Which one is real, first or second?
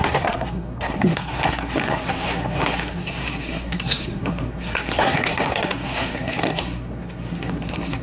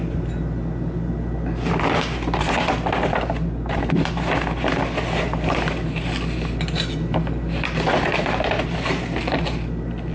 second